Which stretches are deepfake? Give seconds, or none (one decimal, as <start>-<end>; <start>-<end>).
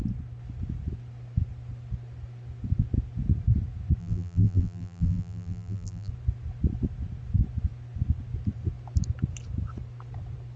4.0-6.1